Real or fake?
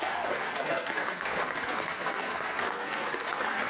fake